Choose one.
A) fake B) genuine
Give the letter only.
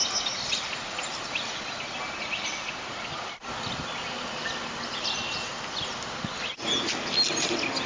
B